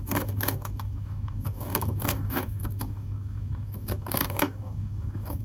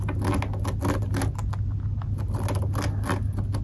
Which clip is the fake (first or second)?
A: first